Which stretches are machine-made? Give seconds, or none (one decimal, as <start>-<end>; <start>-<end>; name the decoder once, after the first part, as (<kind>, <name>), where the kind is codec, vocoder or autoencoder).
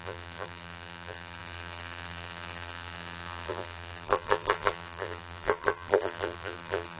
0.0-7.0 (vocoder, BigVGAN v2)